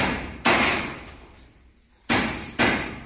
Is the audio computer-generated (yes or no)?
yes